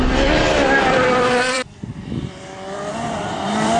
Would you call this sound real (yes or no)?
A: no